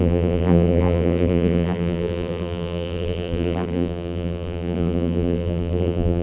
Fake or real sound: fake